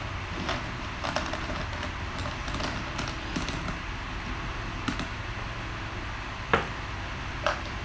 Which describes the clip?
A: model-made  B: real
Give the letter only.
B